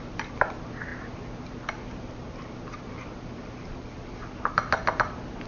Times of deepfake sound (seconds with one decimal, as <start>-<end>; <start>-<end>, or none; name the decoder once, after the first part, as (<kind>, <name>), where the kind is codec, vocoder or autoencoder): none